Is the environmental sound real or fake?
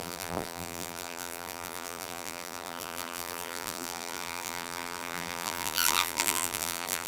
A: fake